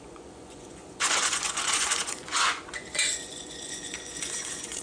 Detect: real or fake fake